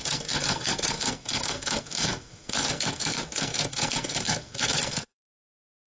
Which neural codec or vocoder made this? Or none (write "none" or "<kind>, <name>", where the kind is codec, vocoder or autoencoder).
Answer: codec, SNAC